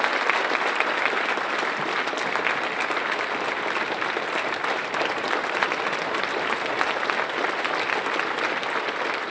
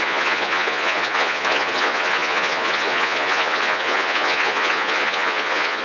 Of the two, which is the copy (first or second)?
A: second